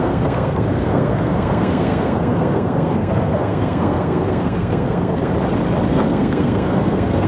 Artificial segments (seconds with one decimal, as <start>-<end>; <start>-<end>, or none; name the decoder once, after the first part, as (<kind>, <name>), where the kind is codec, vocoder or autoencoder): 0.0-5.3 (codec, SNAC); 5.9-7.3